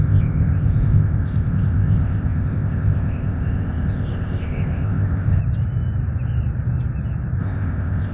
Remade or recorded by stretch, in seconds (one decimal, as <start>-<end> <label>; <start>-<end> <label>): 0.0-5.4 remade; 5.4-7.4 recorded; 7.4-8.1 remade